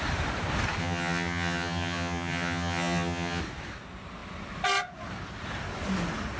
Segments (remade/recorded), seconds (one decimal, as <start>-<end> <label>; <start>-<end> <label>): 0.0-0.8 recorded; 0.8-3.4 remade; 3.4-6.4 recorded